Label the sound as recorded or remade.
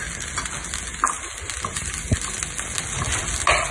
recorded